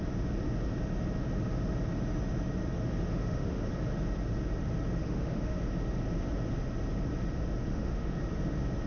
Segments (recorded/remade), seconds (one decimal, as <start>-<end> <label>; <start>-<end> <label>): 0.0-3.1 recorded; 3.1-3.7 remade; 3.7-5.0 recorded; 5.0-5.6 remade; 5.6-7.7 recorded; 7.7-8.2 remade; 8.2-8.9 recorded